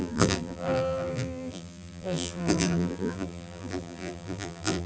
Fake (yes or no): yes